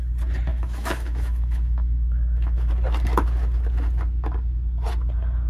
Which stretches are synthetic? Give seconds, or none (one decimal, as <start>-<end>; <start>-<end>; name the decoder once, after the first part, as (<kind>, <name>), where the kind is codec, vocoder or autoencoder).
0.5-2.7 (autoencoder, DAC-VAE)